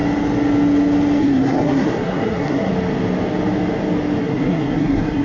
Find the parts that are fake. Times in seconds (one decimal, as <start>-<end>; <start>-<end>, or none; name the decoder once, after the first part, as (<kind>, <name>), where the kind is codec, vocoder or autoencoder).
1.2-2.7 (codec, SNAC); 4.2-5.2